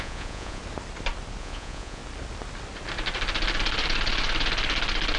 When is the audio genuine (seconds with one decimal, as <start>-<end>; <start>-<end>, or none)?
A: 0.6-1.4; 2.0-5.2